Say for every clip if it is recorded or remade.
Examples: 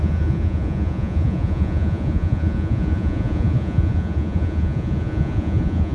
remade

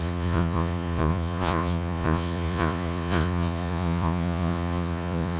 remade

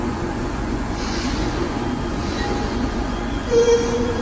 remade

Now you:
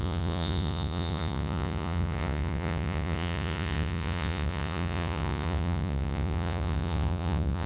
remade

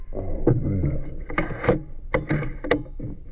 recorded